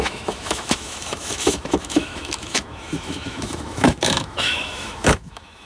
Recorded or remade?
remade